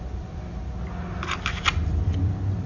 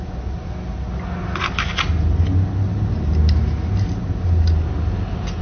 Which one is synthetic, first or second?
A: first